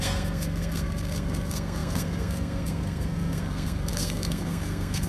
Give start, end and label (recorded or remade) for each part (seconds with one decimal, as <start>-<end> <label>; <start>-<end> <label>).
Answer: 0.0-5.1 remade